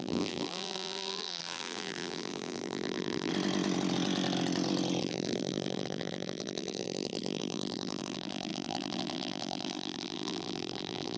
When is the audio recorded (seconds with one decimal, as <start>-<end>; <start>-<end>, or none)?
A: 3.3-5.0